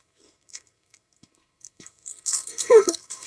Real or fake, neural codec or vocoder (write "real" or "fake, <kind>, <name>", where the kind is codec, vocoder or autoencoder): fake, codec, SNAC